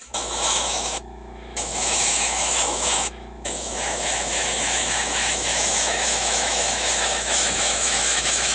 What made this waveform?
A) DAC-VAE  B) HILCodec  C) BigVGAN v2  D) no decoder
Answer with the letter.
A